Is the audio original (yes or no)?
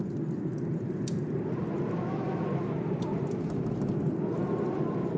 yes